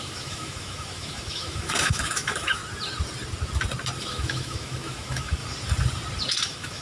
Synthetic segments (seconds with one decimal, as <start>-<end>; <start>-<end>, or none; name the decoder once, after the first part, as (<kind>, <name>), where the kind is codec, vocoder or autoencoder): 0.0-2.6 (autoencoder, DAC-VAE); 4.0-5.4; 6.3-6.8